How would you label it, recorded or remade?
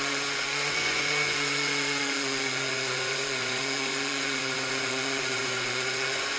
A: remade